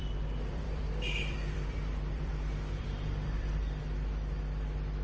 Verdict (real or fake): fake